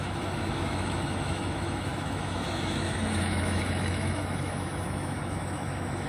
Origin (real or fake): fake